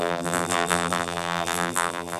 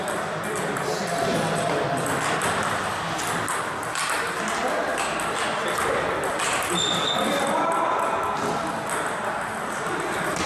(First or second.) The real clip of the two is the second